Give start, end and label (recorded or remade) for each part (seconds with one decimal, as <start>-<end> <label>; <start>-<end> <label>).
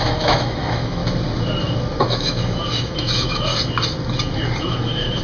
0.0-1.0 remade; 1.0-2.0 recorded; 2.0-3.5 remade; 3.5-4.6 recorded; 4.6-5.2 remade